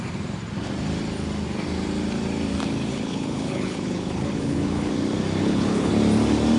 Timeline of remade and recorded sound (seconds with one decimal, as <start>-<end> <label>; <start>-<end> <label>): 0.0-2.9 recorded; 2.9-4.9 remade; 4.9-5.4 recorded; 5.4-5.9 remade; 5.9-6.6 recorded